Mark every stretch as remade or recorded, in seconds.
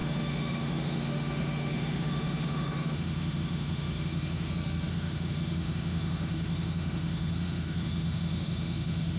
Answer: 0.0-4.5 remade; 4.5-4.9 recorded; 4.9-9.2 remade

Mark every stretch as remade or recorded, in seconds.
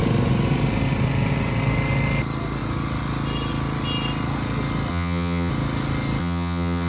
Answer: 0.0-4.9 recorded; 4.9-5.5 remade; 5.5-6.2 recorded; 6.2-6.9 remade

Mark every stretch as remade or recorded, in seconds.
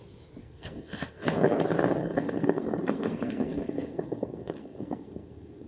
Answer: 0.0-0.4 recorded; 0.4-1.6 remade; 1.6-2.0 recorded; 2.0-5.7 remade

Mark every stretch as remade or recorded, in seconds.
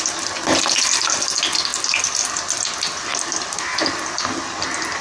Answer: 0.0-5.0 recorded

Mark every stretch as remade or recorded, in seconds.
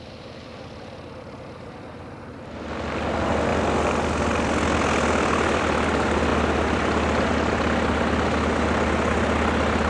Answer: 0.0-9.9 recorded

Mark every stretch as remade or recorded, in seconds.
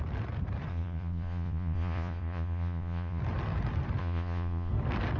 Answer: 0.0-0.7 recorded; 0.7-3.2 remade; 3.2-4.0 recorded; 4.0-4.7 remade; 4.7-5.2 recorded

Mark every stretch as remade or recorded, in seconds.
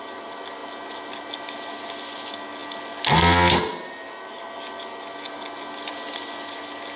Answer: 0.0-7.0 recorded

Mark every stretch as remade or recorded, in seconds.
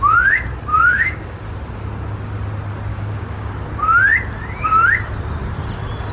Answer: 0.0-0.7 recorded; 0.7-1.5 remade; 1.5-2.9 recorded; 2.9-3.5 remade; 3.5-6.1 recorded